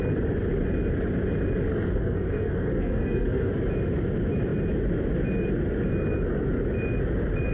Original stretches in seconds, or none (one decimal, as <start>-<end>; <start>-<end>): 0.0-1.7; 3.5-7.5